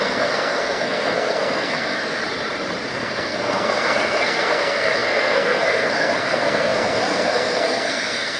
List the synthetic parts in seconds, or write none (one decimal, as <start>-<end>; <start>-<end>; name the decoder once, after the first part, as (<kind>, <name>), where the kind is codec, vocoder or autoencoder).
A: 0.0-2.2 (codec, SNAC); 2.9-8.4